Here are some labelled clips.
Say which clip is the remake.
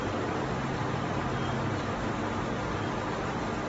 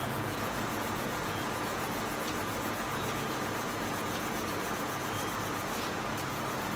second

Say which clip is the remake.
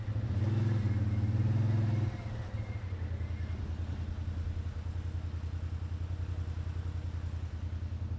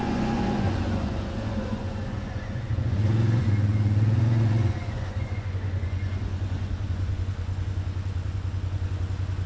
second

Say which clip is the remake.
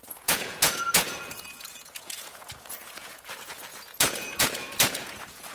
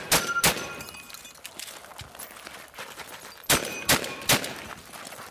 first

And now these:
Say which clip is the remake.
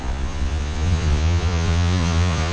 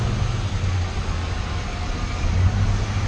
first